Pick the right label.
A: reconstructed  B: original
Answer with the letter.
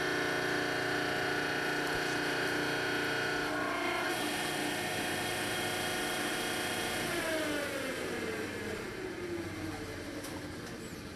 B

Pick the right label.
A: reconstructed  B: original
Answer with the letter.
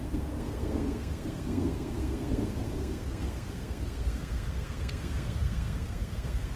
A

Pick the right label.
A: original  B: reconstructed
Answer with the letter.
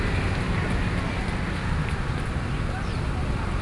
A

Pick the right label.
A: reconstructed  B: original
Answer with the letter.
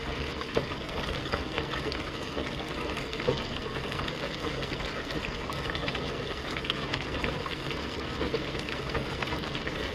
A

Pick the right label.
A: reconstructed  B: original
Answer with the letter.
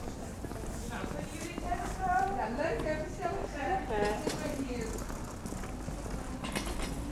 B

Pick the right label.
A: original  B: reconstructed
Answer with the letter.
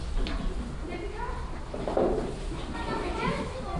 A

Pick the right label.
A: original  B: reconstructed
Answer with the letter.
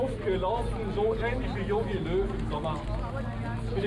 A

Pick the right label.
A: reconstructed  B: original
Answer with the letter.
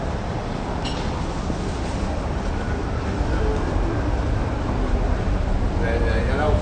B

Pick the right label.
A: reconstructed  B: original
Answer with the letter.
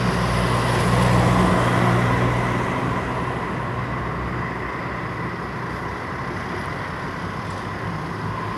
B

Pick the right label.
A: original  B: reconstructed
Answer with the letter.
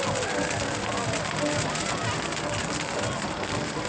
A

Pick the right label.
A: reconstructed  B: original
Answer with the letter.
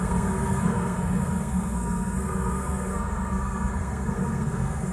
A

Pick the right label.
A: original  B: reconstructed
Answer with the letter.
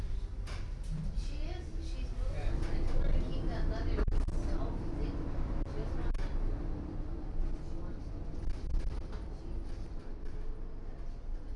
A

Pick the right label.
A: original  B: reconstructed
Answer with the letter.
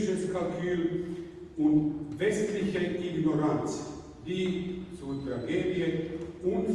A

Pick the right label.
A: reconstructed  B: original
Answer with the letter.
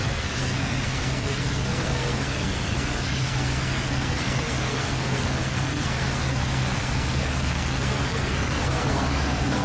A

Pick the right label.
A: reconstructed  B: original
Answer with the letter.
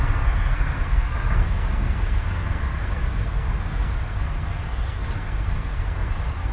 A